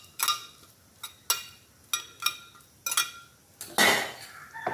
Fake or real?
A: real